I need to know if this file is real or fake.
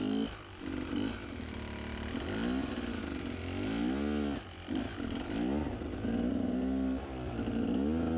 real